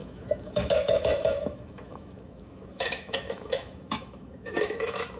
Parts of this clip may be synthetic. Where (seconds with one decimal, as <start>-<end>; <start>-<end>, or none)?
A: 0.0-5.2